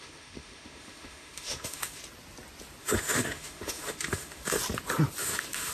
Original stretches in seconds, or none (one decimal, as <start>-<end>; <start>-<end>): 2.0-2.8; 4.6-5.2